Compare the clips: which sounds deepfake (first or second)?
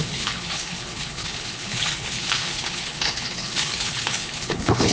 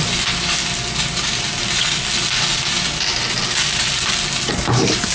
first